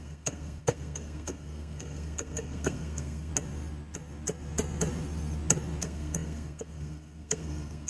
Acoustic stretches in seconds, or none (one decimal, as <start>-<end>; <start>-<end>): 3.3-5.8